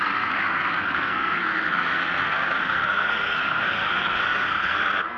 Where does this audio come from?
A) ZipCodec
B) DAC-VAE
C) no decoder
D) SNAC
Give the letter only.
D